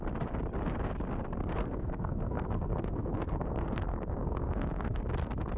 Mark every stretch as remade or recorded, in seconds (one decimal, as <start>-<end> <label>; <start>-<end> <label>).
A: 0.0-1.6 recorded; 1.6-5.0 remade; 5.0-5.6 recorded